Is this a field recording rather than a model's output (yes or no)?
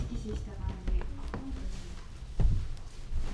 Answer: yes